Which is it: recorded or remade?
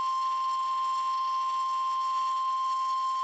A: remade